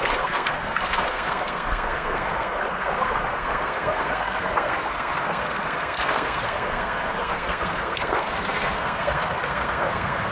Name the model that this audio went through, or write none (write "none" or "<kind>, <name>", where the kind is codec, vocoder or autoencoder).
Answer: codec, SNAC